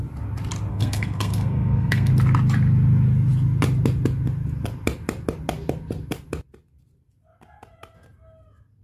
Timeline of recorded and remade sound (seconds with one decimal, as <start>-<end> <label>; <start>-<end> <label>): 0.0-0.7 recorded; 0.7-2.1 remade; 2.1-8.8 recorded

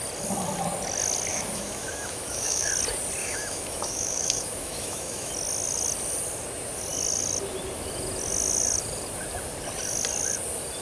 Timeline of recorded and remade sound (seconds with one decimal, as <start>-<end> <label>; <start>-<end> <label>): 0.0-1.3 recorded; 1.3-2.7 remade; 2.7-3.2 recorded; 3.2-5.3 remade; 5.3-10.8 recorded

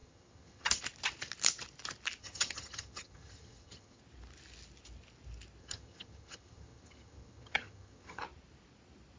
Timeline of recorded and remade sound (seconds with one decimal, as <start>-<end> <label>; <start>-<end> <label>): 0.0-0.8 remade; 0.8-2.2 recorded; 2.2-4.0 remade; 4.0-5.6 recorded; 5.6-8.2 remade; 8.2-9.2 recorded

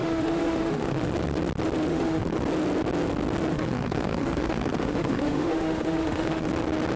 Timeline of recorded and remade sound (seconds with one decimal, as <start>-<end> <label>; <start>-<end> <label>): 0.0-1.1 remade; 1.1-1.9 recorded; 1.9-2.4 remade; 2.4-3.5 recorded; 3.5-6.5 remade; 6.5-7.0 recorded

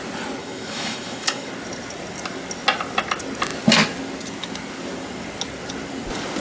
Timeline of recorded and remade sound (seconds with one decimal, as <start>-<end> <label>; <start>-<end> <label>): 0.0-0.4 recorded; 0.4-1.5 remade; 1.5-6.4 recorded

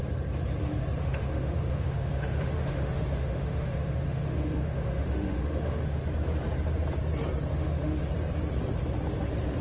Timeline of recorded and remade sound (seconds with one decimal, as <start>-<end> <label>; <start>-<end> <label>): 0.0-1.0 recorded; 1.0-6.0 remade; 6.0-7.5 recorded; 7.5-8.1 remade; 8.1-9.6 recorded

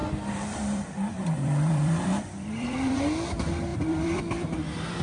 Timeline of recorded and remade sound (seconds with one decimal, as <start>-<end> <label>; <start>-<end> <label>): 0.0-3.0 remade; 3.0-3.7 recorded; 3.7-4.2 remade; 4.2-5.0 recorded